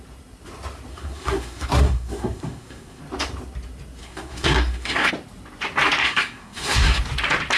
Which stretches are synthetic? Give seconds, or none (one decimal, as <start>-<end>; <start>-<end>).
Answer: 0.9-3.0; 4.0-5.1; 6.0-7.0

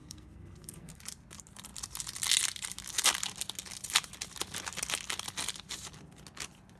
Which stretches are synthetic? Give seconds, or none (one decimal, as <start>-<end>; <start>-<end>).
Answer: 0.0-1.0